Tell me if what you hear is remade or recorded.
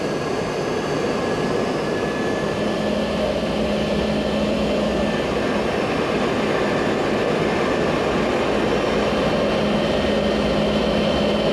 recorded